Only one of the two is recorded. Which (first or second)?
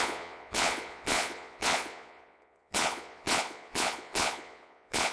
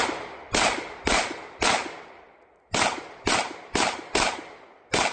second